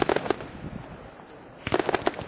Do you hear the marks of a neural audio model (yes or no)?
no